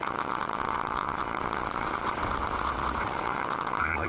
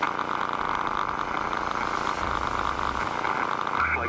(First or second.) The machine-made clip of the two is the first